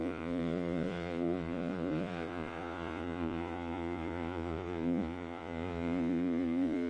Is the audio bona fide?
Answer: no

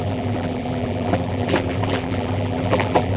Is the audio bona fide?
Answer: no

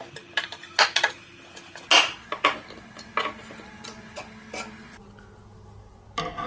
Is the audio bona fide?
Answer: yes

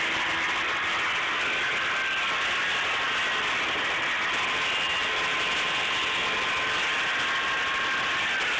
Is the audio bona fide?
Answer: yes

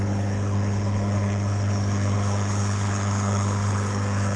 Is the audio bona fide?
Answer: no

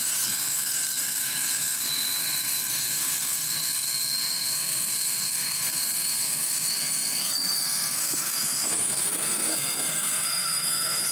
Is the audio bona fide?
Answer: no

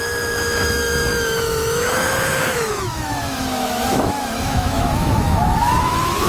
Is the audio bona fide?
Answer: no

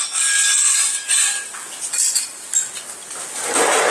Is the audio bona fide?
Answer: yes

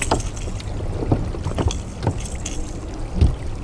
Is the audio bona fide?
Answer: yes